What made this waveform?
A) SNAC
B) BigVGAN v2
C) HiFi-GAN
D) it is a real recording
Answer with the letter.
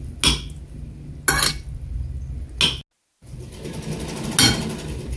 D